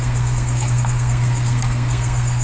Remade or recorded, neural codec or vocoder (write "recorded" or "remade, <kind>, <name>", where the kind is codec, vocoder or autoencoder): remade, codec, SNAC